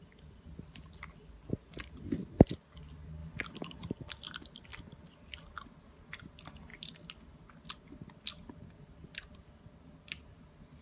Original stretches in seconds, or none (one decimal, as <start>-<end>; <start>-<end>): 0.0-10.8